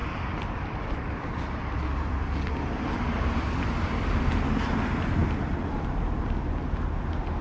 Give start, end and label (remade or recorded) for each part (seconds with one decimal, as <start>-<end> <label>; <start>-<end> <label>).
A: 0.0-4.4 remade; 4.4-5.2 recorded; 5.2-6.5 remade; 6.5-7.4 recorded